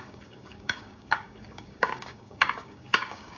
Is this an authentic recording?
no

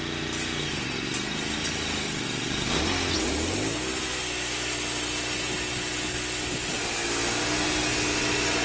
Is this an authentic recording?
yes